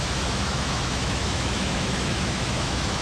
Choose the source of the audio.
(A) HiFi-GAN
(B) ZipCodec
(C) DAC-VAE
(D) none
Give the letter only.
C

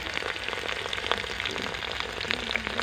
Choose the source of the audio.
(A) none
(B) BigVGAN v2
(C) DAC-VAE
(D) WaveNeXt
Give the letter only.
A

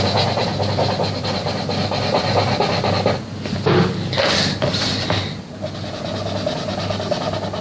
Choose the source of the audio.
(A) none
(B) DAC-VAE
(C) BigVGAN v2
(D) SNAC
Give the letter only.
A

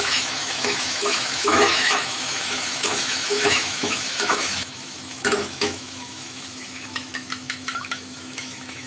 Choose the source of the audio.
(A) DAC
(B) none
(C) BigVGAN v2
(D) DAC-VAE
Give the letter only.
D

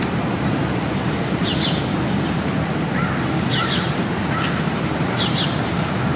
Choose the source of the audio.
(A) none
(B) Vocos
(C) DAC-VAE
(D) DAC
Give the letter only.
A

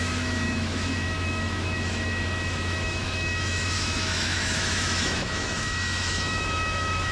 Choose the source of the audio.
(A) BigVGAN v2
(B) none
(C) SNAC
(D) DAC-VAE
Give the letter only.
D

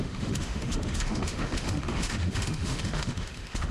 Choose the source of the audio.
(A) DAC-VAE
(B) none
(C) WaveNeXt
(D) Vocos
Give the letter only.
A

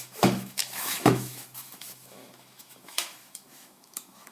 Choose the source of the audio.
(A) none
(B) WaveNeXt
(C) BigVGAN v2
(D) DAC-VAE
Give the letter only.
D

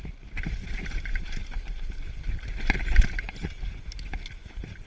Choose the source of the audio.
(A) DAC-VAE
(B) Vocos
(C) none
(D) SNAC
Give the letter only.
C